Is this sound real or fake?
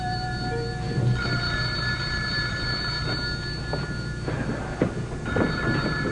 real